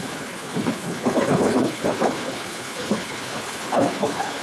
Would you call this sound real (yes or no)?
no